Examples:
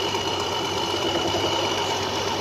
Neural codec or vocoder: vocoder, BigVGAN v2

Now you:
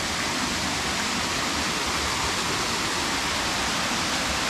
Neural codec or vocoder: none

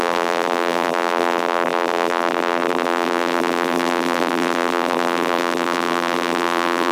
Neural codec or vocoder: vocoder, BigVGAN v2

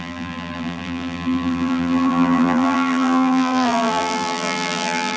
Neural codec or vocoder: vocoder, BigVGAN v2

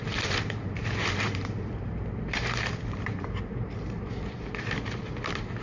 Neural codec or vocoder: vocoder, BigVGAN v2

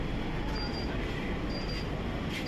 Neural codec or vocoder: none